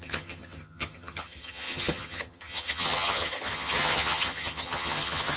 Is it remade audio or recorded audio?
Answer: remade